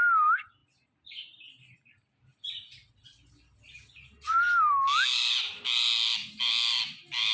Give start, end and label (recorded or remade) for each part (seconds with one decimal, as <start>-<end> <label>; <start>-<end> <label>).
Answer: 0.0-7.3 recorded